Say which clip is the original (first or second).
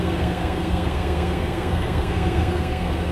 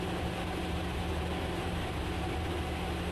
second